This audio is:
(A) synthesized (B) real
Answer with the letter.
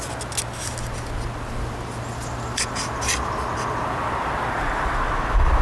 B